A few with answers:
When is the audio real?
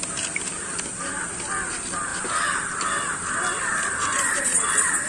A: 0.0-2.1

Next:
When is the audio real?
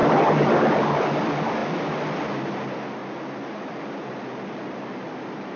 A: 0.0-5.6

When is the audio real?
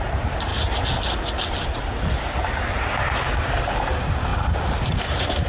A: 0.5-3.6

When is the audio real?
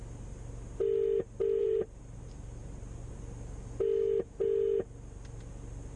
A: 0.0-1.6; 3.1-6.0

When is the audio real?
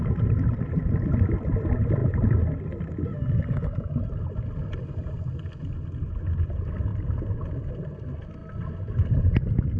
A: 0.0-6.9; 7.4-8.4; 9.1-9.8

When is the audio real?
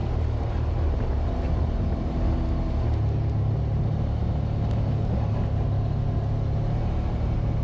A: 2.3-7.6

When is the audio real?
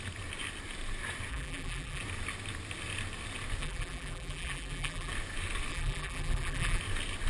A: 0.0-1.3; 2.0-3.6; 5.1-5.7; 6.8-7.3